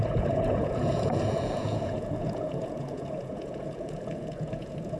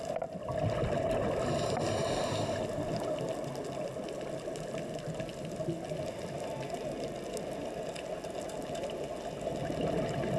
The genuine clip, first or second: second